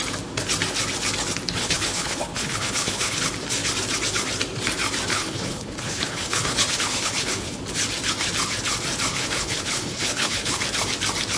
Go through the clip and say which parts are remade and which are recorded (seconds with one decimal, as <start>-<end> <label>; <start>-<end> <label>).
0.0-1.6 recorded; 1.6-3.2 remade; 3.2-5.1 recorded; 5.1-7.6 remade; 7.6-9.1 recorded; 9.1-10.6 remade; 10.6-11.4 recorded